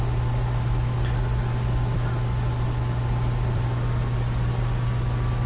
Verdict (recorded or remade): recorded